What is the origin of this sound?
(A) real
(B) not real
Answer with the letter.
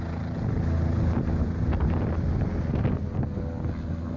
A